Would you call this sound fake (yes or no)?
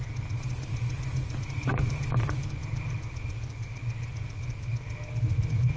no